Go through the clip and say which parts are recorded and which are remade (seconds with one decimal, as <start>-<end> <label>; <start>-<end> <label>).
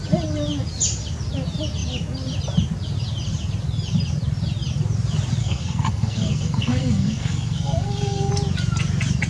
0.0-5.4 recorded; 5.4-8.3 remade; 8.3-9.3 recorded